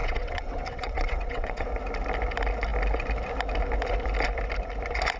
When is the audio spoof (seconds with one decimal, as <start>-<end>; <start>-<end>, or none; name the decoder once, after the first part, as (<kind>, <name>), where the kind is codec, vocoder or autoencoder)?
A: 0.0-1.7 (vocoder, WaveNeXt)